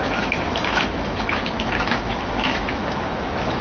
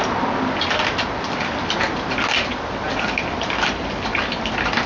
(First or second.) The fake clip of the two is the first